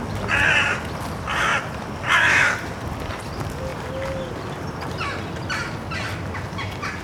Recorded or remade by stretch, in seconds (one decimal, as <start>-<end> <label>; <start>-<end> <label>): 0.0-1.5 recorded; 1.5-3.1 remade; 3.1-7.0 recorded